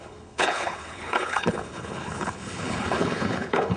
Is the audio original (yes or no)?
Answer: no